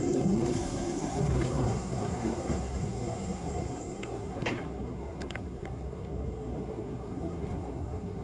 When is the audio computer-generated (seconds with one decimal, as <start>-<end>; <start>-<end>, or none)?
0.0-8.2